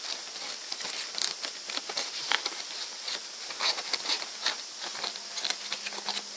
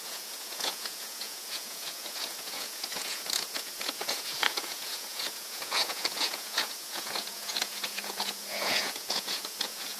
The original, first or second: first